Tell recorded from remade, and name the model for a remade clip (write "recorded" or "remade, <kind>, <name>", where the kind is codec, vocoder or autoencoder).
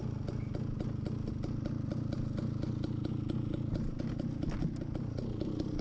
recorded